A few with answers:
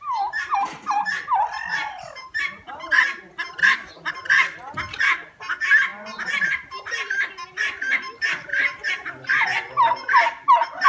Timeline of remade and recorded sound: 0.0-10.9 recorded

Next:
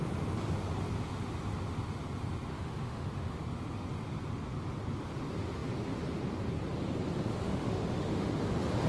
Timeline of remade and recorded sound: 0.0-2.5 recorded; 2.5-3.4 remade; 3.4-7.3 recorded; 7.3-8.3 remade; 8.3-8.9 recorded

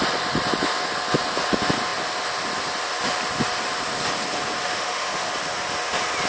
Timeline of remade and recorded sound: 0.0-4.6 recorded; 4.6-5.3 remade; 5.3-6.3 recorded